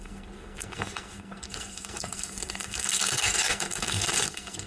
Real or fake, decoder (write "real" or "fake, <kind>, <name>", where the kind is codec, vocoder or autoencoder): fake, codec, SNAC